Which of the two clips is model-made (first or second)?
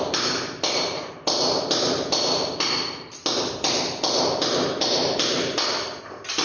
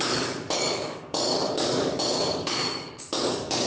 second